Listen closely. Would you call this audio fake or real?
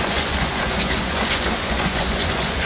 fake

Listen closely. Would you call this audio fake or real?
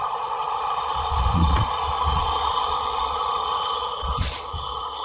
fake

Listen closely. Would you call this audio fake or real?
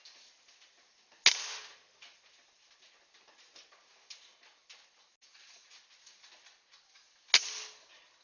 real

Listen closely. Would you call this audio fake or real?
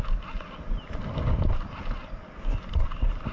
real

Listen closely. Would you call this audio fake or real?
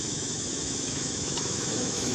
fake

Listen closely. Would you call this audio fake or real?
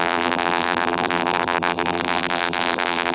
fake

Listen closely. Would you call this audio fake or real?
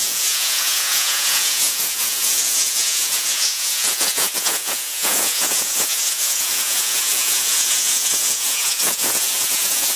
fake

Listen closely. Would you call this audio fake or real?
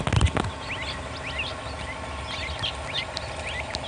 real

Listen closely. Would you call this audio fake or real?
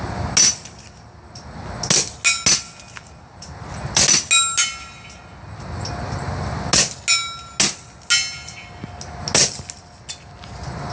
real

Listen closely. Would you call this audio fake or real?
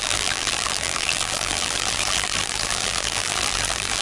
fake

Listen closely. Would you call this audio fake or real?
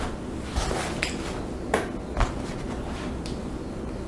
real